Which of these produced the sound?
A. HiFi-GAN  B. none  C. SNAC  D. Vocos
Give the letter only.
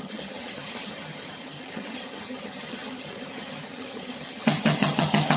A